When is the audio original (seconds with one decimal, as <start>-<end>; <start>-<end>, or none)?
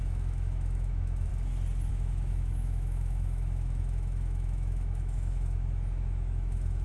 1.3-1.9